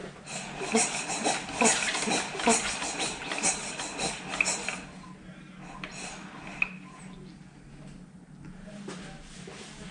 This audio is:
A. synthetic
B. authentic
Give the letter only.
B